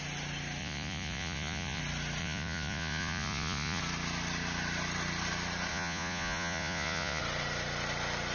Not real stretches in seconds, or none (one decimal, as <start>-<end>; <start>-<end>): 0.6-1.8; 2.2-3.8; 5.7-7.2